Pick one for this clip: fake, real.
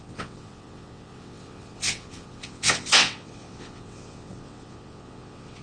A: fake